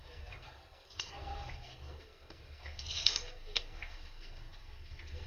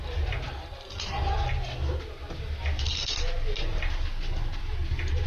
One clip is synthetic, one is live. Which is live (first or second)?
second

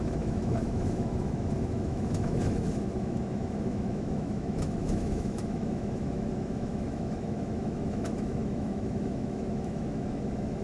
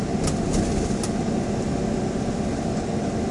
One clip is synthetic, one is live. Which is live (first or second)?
second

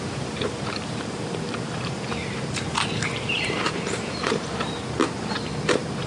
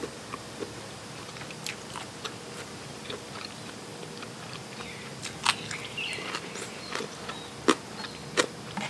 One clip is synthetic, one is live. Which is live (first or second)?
second